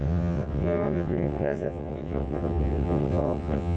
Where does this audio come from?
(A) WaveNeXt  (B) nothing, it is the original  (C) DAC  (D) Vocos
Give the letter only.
A